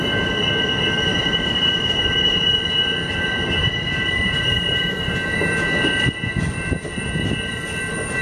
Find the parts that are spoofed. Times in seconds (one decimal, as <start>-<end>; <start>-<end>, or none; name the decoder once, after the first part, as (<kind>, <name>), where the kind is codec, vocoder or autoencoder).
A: 1.1-2.6 (vocoder, BigVGAN v2); 3.6-5.1